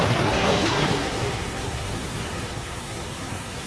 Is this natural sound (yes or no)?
no